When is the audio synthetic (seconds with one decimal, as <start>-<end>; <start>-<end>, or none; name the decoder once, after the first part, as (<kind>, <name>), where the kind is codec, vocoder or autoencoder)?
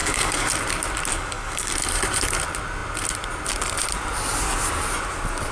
0.0-0.5 (codec, DAC); 1.1-1.7